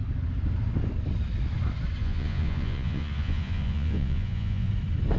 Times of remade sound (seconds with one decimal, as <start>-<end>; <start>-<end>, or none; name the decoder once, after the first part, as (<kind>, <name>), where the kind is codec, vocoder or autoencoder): 2.0-4.7 (vocoder, Vocos)